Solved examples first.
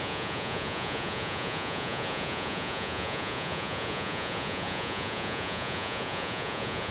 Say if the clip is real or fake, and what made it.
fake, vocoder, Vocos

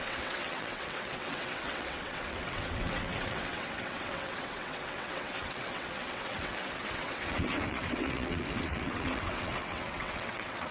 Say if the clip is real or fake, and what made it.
fake, vocoder, WaveNeXt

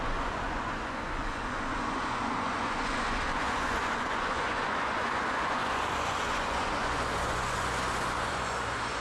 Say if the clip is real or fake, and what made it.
fake, vocoder, Vocos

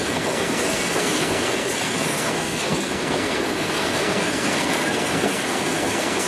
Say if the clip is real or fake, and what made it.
fake, codec, SNAC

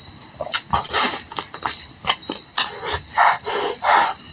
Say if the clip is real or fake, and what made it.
real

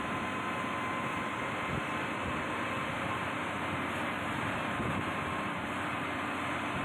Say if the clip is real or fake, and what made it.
real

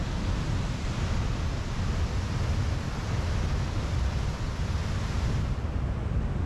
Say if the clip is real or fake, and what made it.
real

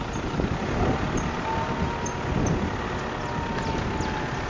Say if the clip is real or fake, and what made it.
real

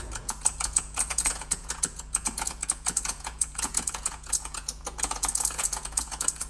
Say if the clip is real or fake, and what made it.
fake, vocoder, Vocos